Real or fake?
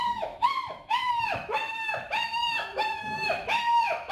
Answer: fake